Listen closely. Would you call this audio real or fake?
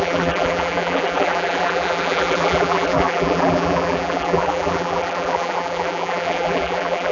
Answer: fake